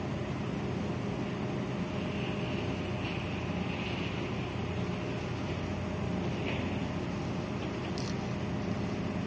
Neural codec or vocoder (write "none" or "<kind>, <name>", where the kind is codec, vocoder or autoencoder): none